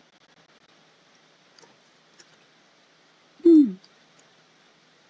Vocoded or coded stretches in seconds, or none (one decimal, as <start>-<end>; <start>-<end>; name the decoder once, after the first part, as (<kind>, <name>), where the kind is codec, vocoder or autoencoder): none